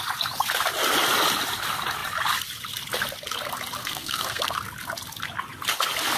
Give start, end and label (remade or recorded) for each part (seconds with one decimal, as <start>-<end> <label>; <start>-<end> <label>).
0.0-3.8 recorded; 3.8-4.4 remade; 4.4-6.2 recorded